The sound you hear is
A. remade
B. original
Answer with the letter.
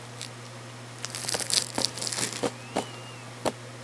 B